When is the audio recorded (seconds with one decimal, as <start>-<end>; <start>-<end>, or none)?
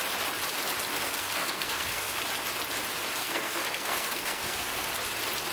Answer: 0.0-0.9; 2.2-3.2; 4.9-5.5